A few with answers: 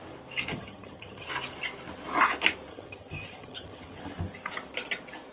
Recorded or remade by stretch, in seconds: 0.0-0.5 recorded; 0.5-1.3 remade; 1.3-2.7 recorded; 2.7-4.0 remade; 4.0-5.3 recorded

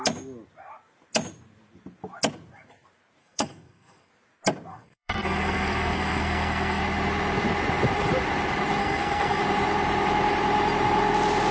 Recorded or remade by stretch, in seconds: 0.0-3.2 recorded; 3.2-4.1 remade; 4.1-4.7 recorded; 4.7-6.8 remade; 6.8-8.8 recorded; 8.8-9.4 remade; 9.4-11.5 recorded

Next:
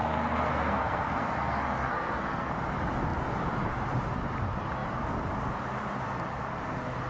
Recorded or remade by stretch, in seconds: 0.0-2.5 remade; 2.5-7.1 recorded

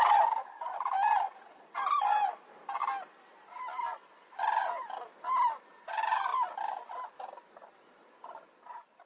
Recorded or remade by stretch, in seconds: 0.0-9.1 recorded

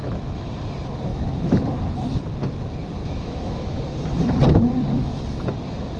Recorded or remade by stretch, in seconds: 0.0-0.5 remade; 0.5-1.1 recorded; 1.1-1.8 remade; 1.8-3.0 recorded; 3.0-3.8 remade; 3.8-6.0 recorded